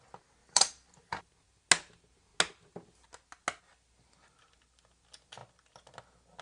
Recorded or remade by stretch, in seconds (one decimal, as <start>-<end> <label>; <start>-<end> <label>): 0.0-0.4 recorded; 0.4-1.3 remade; 1.3-6.4 recorded